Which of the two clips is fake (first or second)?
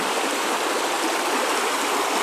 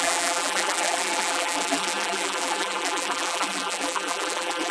second